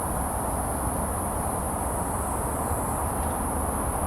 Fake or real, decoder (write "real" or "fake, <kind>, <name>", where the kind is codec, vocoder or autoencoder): real